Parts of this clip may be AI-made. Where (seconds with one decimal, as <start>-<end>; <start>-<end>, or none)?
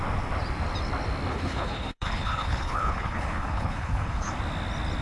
1.3-4.3